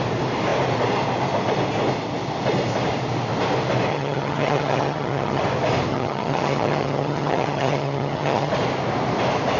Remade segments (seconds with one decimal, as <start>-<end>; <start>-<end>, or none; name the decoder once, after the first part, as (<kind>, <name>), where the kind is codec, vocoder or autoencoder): 3.9-5.4 (vocoder, HiFi-GAN); 5.9-8.5